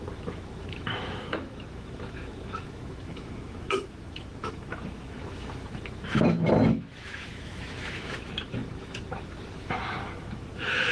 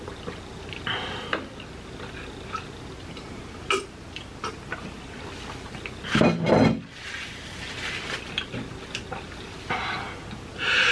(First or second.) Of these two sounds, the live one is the second